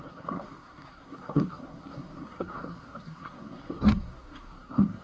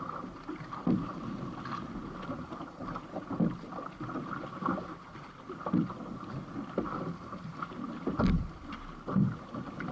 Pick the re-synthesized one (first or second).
first